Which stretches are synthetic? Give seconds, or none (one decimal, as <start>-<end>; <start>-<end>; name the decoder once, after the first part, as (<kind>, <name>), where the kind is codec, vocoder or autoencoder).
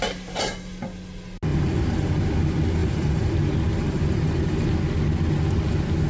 1.5-2.1 (vocoder, BigVGAN v2); 2.8-3.3; 3.7-4.7